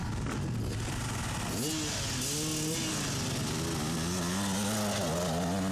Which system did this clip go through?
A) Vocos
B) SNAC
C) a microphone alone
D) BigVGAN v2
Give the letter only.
C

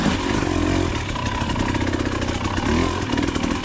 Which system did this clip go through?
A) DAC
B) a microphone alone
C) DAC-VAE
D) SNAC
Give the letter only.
B